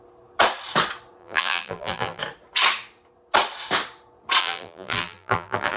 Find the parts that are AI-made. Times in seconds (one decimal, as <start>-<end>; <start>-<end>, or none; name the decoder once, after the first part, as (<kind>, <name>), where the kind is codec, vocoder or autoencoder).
1.2-2.2 (vocoder, BigVGAN v2); 4.4-5.8